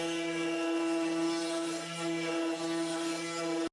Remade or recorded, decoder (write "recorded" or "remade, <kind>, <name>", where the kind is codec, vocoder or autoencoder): recorded